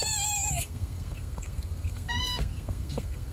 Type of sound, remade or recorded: remade